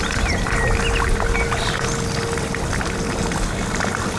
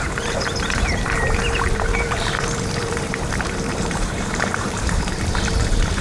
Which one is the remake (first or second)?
second